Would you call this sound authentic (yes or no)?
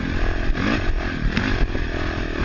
yes